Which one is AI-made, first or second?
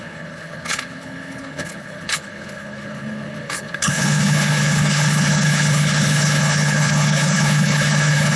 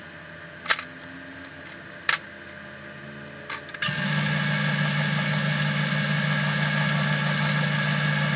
first